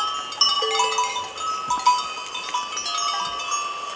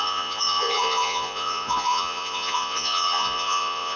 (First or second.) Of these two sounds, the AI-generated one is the second